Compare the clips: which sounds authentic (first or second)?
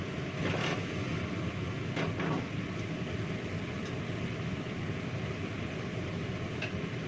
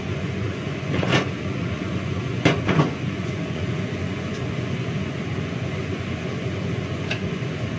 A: first